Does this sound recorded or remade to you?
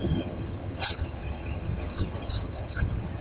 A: remade